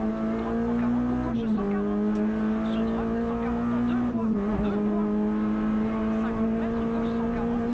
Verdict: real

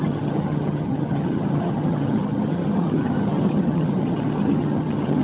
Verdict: fake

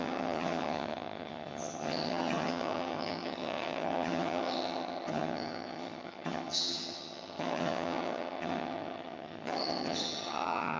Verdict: fake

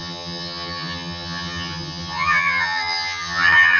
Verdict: fake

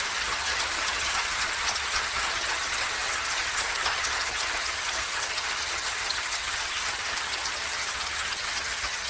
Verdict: fake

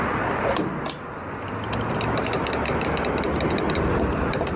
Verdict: real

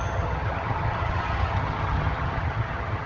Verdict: fake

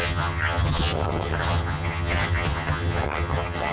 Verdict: fake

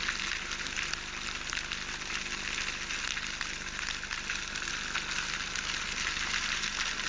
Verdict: real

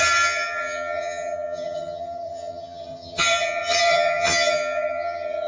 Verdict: fake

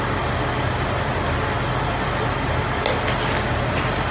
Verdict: real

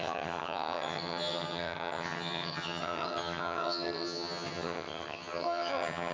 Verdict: fake